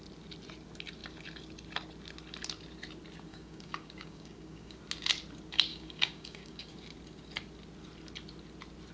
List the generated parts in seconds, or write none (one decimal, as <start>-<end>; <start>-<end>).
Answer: 3.3-4.8; 5.7-6.7